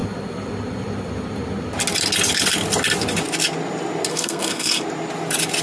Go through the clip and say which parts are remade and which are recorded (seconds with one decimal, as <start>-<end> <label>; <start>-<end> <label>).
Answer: 0.0-4.1 recorded; 4.1-4.8 remade; 4.8-5.6 recorded